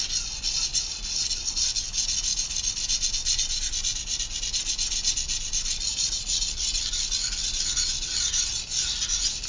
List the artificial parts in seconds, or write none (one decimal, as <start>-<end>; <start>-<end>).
none